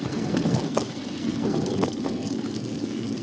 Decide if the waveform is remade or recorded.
remade